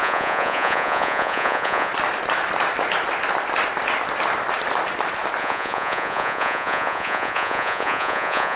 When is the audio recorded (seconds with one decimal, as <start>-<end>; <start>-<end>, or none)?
1.9-5.4